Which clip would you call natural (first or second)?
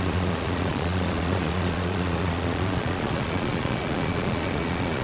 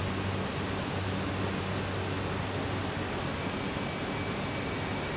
second